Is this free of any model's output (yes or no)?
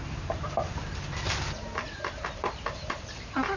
yes